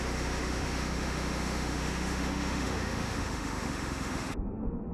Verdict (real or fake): fake